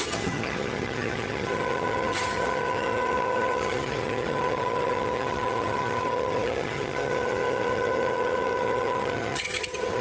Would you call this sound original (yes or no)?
no